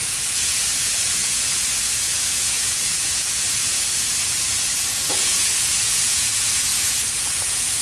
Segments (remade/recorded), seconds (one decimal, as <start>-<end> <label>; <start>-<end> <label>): 0.0-7.8 remade